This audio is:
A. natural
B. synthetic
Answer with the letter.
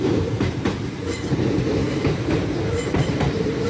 A